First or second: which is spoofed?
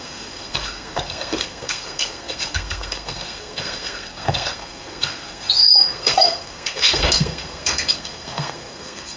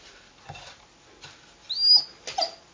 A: first